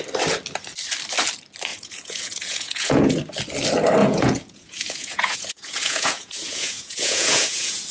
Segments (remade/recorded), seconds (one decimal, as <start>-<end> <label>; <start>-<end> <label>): 0.0-1.7 recorded; 1.7-3.2 remade; 3.2-4.0 recorded; 4.0-7.9 remade